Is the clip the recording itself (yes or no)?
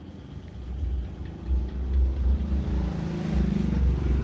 yes